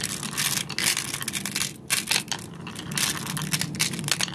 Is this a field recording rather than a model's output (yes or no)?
yes